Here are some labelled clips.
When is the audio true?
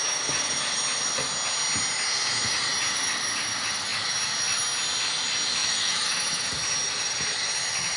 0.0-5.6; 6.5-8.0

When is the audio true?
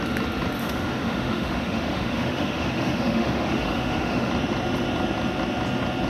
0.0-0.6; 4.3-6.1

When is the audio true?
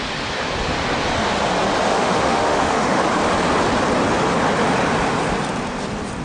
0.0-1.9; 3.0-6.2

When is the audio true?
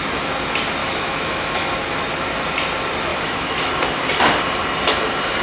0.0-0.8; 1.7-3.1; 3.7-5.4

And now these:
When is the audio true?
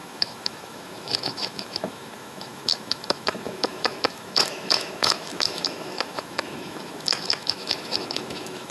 none